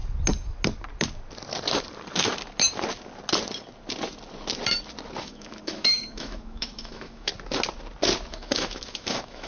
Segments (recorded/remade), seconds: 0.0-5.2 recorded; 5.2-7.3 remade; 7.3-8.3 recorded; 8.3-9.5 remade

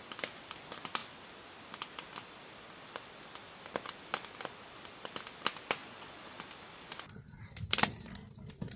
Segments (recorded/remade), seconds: 0.0-5.8 recorded; 5.8-6.4 remade; 6.4-8.8 recorded

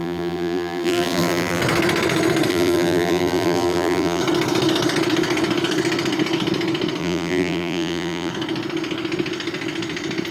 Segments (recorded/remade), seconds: 0.0-1.6 remade; 1.6-2.5 recorded; 2.5-4.2 remade; 4.2-7.0 recorded; 7.0-8.3 remade; 8.3-10.3 recorded

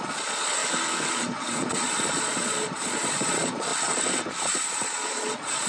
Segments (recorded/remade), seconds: 0.0-0.6 remade; 0.6-1.1 recorded; 1.1-3.7 remade; 3.7-4.4 recorded; 4.4-5.7 remade

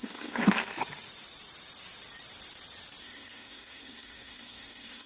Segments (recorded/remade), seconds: 0.0-0.5 remade; 0.5-3.0 recorded; 3.0-5.1 remade

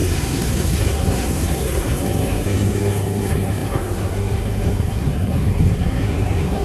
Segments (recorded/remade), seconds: 0.0-6.6 remade

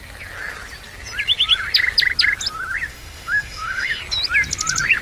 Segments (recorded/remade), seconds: 0.0-2.9 recorded; 2.9-4.0 remade; 4.0-5.0 recorded